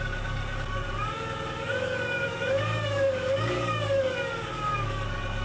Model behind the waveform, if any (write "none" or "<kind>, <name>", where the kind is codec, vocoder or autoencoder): codec, DAC